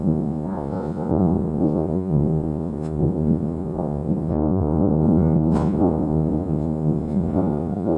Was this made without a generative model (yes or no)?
no